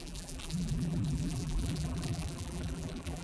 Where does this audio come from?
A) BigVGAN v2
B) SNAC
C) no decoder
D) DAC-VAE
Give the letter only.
A